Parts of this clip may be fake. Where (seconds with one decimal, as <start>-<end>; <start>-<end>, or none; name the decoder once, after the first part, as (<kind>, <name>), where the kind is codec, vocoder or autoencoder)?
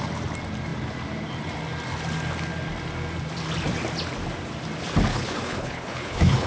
5.1-6.5 (codec, HILCodec)